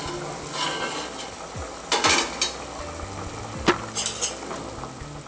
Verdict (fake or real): real